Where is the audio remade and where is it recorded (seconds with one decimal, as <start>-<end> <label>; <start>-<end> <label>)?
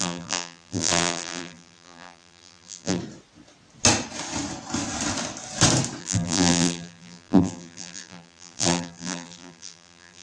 0.0-3.0 remade; 3.0-6.0 recorded; 6.0-10.2 remade